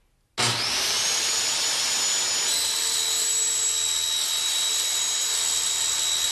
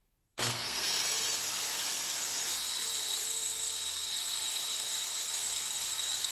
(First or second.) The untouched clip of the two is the first